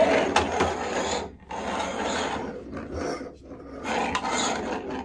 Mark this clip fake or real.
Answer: real